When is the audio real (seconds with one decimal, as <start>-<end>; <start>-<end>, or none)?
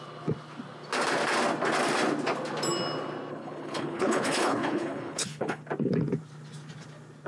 0.0-3.3; 5.6-7.3